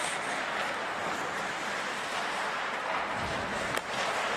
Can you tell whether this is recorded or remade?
recorded